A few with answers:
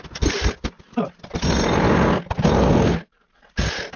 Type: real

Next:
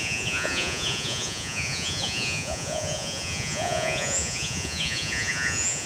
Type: fake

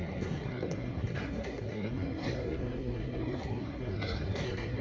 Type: fake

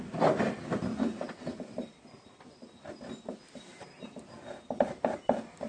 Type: real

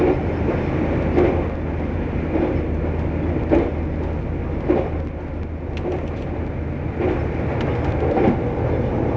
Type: real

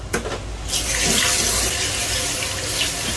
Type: real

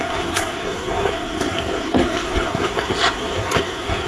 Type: fake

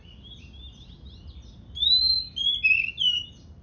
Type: real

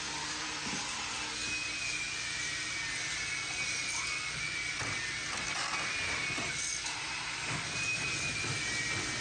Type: real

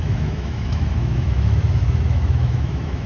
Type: fake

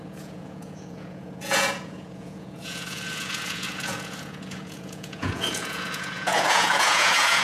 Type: fake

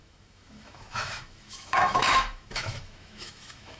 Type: fake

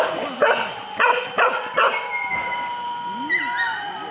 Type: real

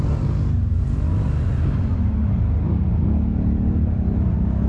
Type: real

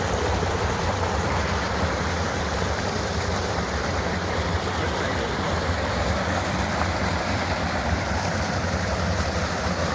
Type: fake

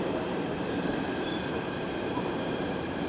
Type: fake